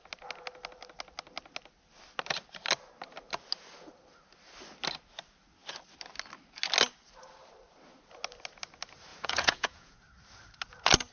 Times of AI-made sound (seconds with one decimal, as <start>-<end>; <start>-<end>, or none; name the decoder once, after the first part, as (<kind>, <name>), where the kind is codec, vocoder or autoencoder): 9.1-10.0 (vocoder, Vocos)